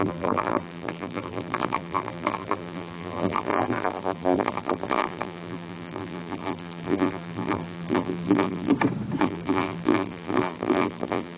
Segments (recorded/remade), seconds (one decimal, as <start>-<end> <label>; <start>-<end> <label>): 0.0-8.7 remade; 8.7-9.2 recorded; 9.2-11.4 remade